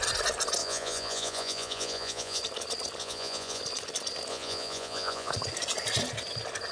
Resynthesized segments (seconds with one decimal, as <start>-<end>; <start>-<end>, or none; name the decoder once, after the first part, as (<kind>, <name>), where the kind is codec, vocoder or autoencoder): 0.6-2.4 (vocoder, Vocos); 3.0-3.6; 4.3-5.3

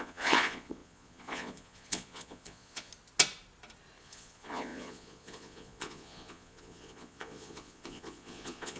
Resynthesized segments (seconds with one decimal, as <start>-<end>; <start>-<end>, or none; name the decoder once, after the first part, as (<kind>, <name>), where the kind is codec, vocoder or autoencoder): 0.0-2.9 (vocoder, Vocos); 4.0-8.8

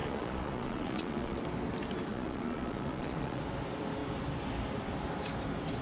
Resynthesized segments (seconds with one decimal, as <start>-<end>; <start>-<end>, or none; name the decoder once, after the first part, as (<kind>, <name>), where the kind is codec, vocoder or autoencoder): 0.0-1.4 (vocoder, Vocos); 2.1-3.4